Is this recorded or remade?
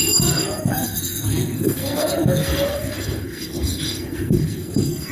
remade